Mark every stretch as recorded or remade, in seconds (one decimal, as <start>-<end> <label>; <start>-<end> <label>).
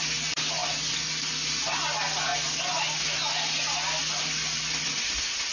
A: 0.0-5.5 recorded